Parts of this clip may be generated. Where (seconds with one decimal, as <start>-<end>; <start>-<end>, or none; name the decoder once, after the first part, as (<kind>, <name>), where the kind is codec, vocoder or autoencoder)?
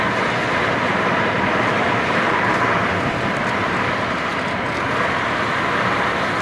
0.0-4.3 (vocoder, BigVGAN v2); 5.4-6.4